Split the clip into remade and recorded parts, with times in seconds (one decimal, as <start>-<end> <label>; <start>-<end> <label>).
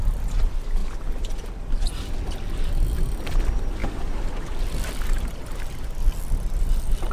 0.0-7.1 recorded